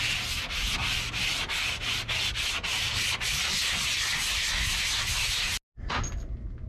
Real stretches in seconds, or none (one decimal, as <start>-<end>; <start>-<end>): 0.0-6.7